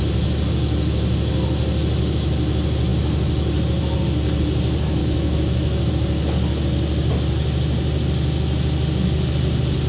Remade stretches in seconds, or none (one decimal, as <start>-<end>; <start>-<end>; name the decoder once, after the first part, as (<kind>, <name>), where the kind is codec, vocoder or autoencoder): 5.0-5.9 (autoencoder, DAC-VAE)